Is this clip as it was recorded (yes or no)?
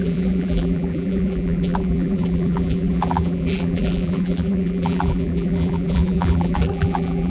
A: no